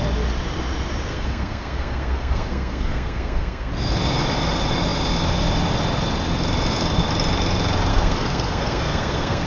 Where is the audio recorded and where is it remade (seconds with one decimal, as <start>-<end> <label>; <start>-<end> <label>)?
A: 0.0-1.1 recorded; 1.1-3.7 remade; 3.7-7.9 recorded; 7.9-9.5 remade